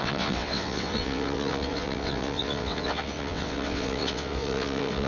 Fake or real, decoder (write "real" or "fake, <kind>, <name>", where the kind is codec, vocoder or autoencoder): fake, vocoder, WaveNeXt